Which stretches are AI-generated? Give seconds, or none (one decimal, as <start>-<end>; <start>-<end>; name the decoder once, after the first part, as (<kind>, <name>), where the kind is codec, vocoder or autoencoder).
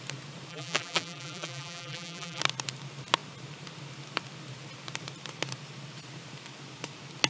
0.5-2.4 (vocoder, BigVGAN v2)